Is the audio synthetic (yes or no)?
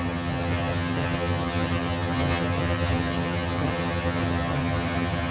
yes